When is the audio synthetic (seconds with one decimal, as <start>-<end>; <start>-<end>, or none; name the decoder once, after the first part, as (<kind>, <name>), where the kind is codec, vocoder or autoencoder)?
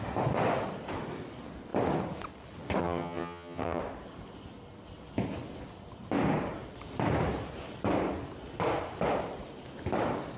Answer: 2.8-3.8 (vocoder, HiFi-GAN)